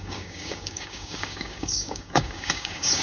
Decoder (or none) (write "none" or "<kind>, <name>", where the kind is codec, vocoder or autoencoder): codec, DAC